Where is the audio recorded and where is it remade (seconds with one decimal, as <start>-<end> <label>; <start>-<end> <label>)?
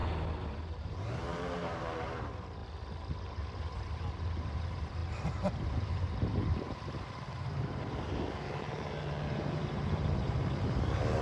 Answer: 0.0-0.8 recorded; 0.8-2.6 remade; 2.6-3.2 recorded; 3.2-11.2 remade